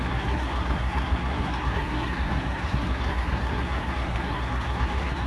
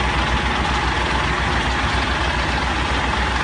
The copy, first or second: first